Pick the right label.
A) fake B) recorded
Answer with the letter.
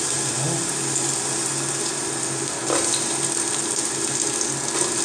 B